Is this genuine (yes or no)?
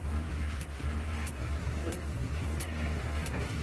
no